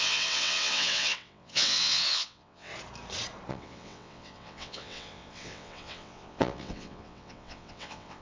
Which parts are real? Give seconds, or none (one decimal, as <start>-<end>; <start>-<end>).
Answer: 2.7-3.5